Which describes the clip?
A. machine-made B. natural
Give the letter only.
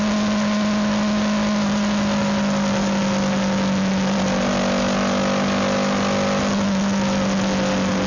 B